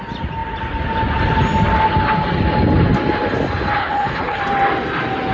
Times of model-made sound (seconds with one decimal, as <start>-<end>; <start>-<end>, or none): 3.8-4.4

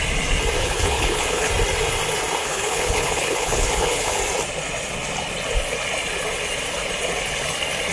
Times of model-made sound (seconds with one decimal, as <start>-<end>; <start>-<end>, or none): 0.6-1.5; 2.4-4.2

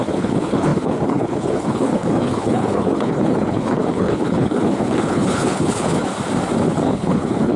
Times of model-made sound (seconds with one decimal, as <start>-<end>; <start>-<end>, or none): 0.0-6.1; 6.7-7.6

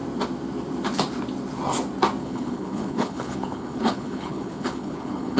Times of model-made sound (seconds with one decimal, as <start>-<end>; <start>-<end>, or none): 2.2-5.4